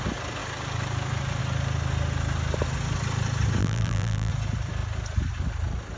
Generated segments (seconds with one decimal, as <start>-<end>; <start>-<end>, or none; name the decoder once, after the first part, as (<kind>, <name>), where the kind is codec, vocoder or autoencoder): 3.6-4.3 (vocoder, BigVGAN v2)